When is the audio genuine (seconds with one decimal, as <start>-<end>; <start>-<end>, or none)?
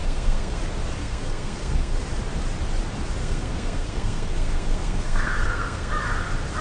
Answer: 0.6-1.0; 2.0-3.2; 5.9-6.6